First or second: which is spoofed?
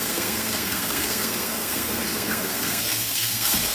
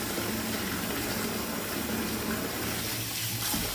first